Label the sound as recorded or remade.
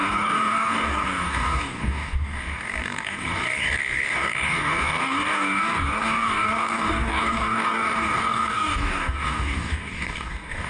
remade